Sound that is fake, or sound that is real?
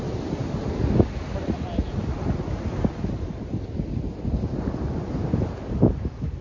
real